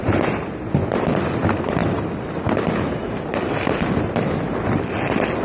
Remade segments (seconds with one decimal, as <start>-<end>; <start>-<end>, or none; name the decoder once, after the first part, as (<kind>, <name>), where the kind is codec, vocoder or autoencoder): 1.8-2.4 (vocoder, BigVGAN v2)